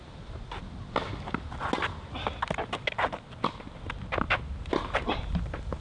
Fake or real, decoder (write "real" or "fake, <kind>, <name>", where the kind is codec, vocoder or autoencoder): real